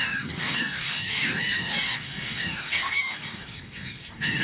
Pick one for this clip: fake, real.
fake